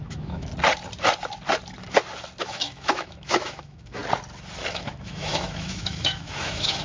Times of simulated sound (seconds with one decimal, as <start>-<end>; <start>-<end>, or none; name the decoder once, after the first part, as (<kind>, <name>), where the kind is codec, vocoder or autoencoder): 0.0-0.5 (autoencoder, DAC-VAE); 2.4-4.0; 4.7-6.8

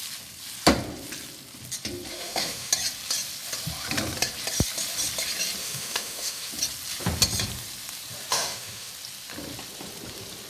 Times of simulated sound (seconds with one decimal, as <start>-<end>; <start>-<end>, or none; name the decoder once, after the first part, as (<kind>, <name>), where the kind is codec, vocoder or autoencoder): 2.1-2.7 (autoencoder, DAC-VAE); 5.6-6.5; 8.3-8.9

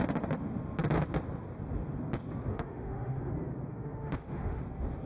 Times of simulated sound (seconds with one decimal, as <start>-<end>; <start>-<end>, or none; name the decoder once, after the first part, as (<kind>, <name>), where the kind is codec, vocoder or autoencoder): 2.5-3.3 (autoencoder, DAC-VAE); 3.7-4.6

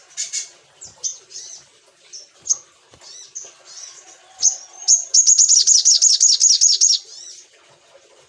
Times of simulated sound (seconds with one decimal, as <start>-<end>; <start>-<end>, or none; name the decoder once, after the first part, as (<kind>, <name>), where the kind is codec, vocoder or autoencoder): none

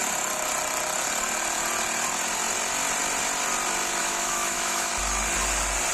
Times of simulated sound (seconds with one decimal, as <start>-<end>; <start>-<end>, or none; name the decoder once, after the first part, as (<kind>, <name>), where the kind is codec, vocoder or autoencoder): 4.0-4.9 (autoencoder, DAC-VAE)